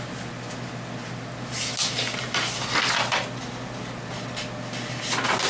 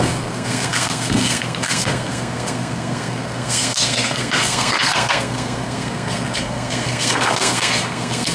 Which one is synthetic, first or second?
second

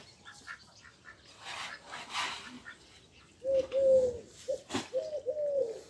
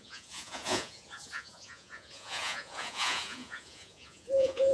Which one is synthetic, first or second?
second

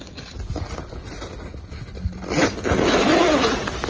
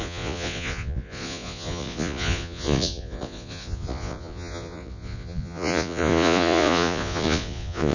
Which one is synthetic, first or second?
second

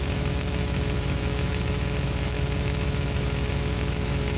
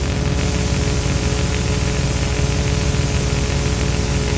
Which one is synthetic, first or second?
first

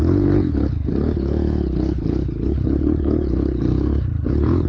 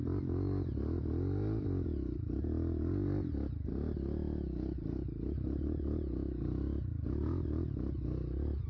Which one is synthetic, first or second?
first